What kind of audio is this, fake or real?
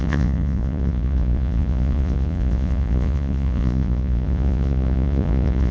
fake